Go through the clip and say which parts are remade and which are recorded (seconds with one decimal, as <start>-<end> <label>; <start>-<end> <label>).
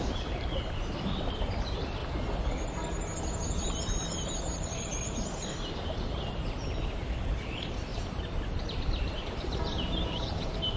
0.0-2.0 remade; 2.0-3.8 recorded; 3.8-4.9 remade; 4.9-6.8 recorded; 6.8-7.9 remade; 7.9-9.0 recorded; 9.0-10.8 remade